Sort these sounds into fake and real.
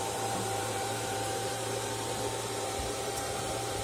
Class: fake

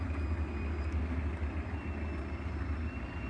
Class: real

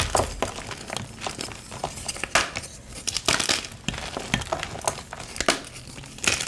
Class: real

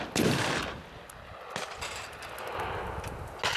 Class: real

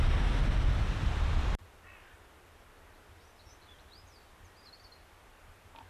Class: real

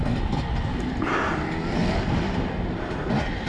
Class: real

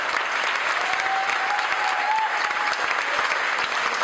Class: real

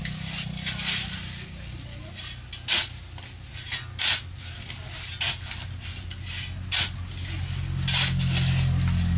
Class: real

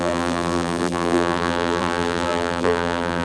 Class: fake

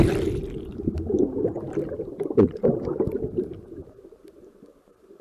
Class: real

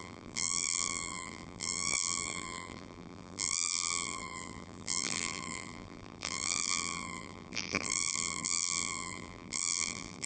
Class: fake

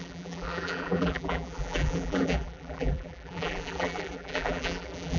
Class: fake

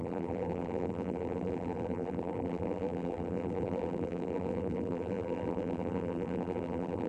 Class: fake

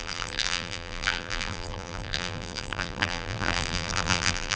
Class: fake